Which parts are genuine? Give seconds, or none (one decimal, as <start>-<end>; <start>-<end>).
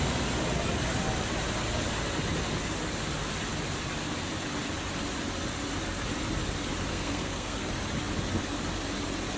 0.0-6.9; 7.7-9.4